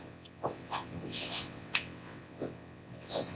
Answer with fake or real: fake